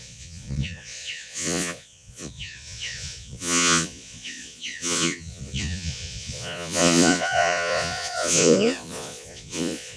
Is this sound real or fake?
fake